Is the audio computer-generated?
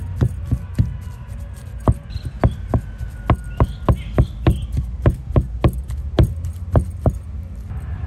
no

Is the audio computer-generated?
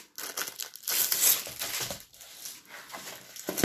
no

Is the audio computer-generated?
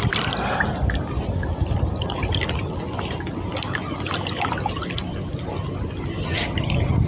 no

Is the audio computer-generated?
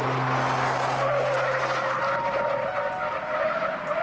no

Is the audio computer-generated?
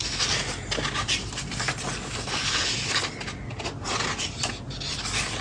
no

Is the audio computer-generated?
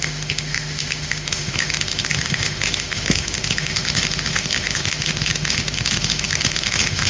yes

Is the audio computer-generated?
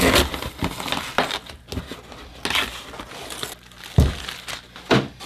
no